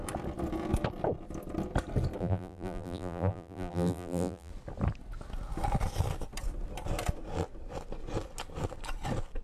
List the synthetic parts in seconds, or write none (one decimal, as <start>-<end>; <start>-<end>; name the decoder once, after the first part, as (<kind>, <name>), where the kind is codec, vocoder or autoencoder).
2.2-4.5 (vocoder, BigVGAN v2)